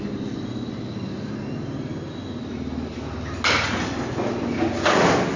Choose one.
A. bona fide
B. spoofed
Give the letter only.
A